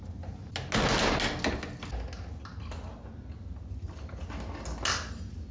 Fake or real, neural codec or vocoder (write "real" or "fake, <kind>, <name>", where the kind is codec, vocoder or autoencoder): real